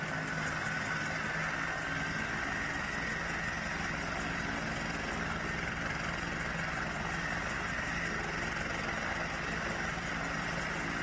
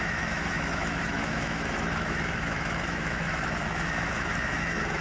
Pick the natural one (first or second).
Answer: first